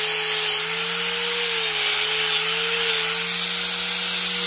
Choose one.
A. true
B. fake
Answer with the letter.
A